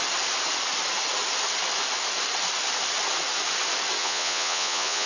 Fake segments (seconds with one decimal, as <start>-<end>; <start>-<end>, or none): 4.0-5.1